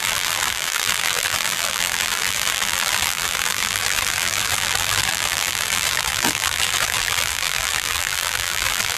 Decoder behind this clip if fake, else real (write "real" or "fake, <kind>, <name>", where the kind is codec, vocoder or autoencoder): fake, vocoder, BigVGAN v2